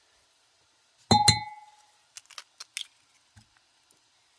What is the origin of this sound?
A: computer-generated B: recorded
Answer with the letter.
B